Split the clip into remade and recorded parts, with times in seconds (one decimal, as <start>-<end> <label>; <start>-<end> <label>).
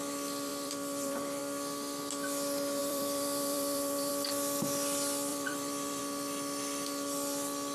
0.0-0.5 recorded; 0.5-1.4 remade; 1.4-2.8 recorded; 2.8-4.1 remade; 4.1-5.3 recorded; 5.3-6.0 remade; 6.0-7.7 recorded